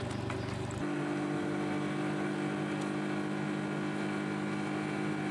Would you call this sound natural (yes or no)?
yes